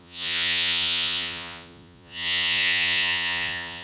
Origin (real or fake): fake